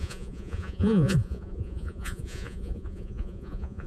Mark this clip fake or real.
fake